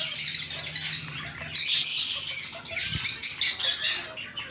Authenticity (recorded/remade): recorded